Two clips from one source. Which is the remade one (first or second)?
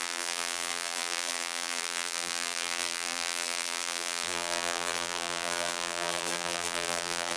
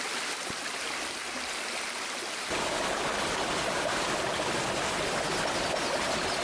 first